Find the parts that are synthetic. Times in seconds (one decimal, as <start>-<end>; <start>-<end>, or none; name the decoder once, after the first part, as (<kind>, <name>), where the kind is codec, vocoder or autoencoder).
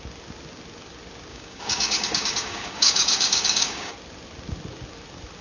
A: 1.3-3.9 (codec, DAC)